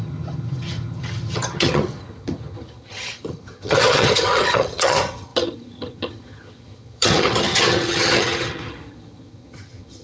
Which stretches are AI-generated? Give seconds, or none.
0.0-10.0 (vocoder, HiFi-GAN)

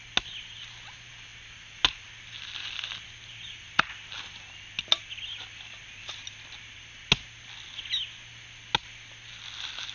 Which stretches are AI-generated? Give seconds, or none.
none